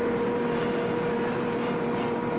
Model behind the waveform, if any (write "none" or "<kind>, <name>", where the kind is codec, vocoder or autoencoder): none